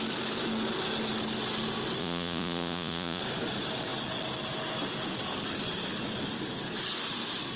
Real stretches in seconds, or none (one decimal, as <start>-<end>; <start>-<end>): 0.0-2.0; 3.2-7.6